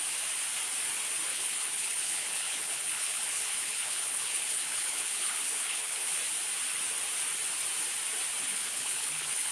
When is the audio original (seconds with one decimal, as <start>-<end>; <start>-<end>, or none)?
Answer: 0.0-1.3; 6.2-8.4